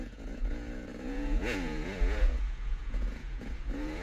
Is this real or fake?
fake